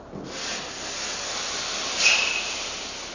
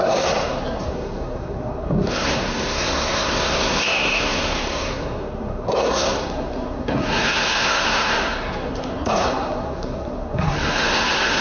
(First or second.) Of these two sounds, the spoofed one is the second